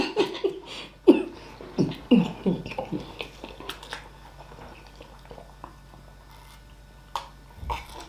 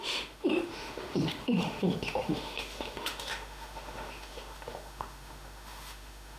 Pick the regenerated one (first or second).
second